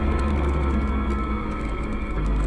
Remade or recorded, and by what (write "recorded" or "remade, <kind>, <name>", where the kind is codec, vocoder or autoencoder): remade, codec, SNAC